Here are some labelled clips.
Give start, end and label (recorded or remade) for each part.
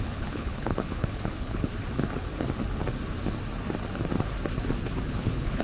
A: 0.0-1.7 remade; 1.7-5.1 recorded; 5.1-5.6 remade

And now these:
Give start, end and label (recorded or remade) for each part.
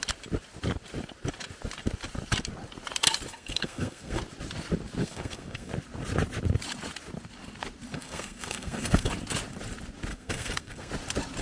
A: 0.0-3.3 recorded; 3.3-4.2 remade; 4.2-5.0 recorded; 5.0-5.7 remade; 5.7-7.9 recorded; 7.9-9.1 remade; 9.1-10.1 recorded; 10.1-10.9 remade; 10.9-11.4 recorded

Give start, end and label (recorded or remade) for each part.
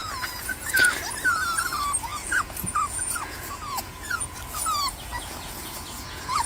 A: 0.0-0.9 remade; 0.9-2.1 recorded; 2.1-4.4 remade; 4.4-5.1 recorded; 5.1-6.5 remade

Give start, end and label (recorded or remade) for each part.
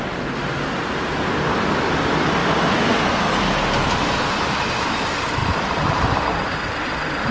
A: 0.0-5.4 recorded; 5.4-6.0 remade; 6.0-7.3 recorded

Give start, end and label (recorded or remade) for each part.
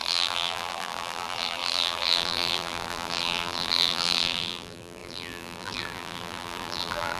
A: 0.0-7.2 remade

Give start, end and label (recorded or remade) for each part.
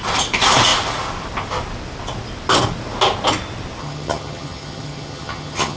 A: 0.0-3.8 recorded; 3.8-5.8 remade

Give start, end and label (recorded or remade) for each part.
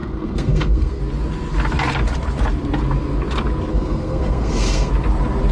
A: 0.0-1.0 remade; 1.0-3.7 recorded; 3.7-4.9 remade; 4.9-5.5 recorded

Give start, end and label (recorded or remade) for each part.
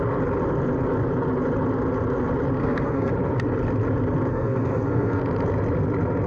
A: 0.0-2.6 recorded; 2.6-3.1 remade; 3.1-4.3 recorded; 4.3-5.2 remade; 5.2-6.3 recorded